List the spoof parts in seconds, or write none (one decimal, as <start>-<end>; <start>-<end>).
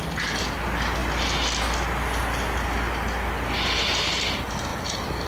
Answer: none